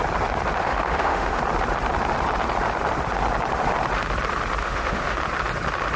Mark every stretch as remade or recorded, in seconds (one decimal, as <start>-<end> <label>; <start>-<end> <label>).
0.0-0.6 recorded; 0.6-1.4 remade; 1.4-4.6 recorded; 4.6-5.2 remade; 5.2-6.0 recorded